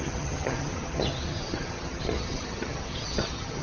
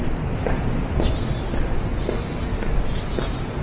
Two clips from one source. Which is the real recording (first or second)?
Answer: second